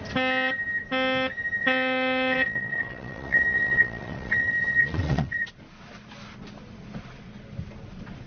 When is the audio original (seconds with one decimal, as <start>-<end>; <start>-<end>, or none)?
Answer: 0.0-1.6; 5.5-8.3